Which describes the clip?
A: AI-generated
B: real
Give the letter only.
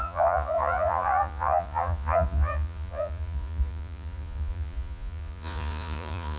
A